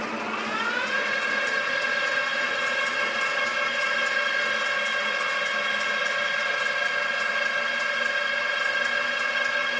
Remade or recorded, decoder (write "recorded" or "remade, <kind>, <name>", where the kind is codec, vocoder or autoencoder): recorded